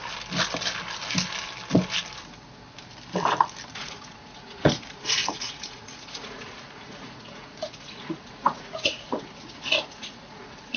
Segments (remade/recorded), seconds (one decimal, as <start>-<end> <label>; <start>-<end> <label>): 0.0-3.7 recorded; 3.7-10.8 remade